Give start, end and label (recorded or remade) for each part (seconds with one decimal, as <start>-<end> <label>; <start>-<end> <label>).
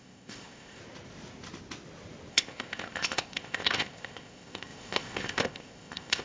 0.0-0.8 remade; 0.8-2.3 recorded; 2.3-6.2 remade